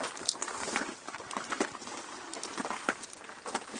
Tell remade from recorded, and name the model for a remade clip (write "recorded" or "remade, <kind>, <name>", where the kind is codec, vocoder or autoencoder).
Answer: remade, vocoder, BigVGAN v2